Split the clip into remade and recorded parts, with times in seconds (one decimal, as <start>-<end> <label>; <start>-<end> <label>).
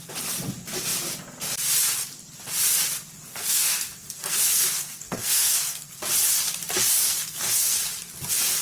0.0-3.3 recorded; 3.3-6.0 remade; 6.0-6.9 recorded; 6.9-7.8 remade; 7.8-8.6 recorded